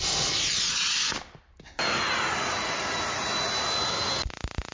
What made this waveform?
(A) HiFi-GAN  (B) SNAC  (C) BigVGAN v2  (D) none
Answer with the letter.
D